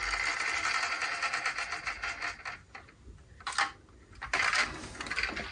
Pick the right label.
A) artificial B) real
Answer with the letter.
B